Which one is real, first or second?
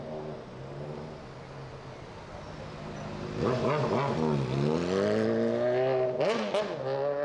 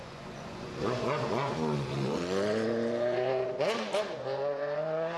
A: first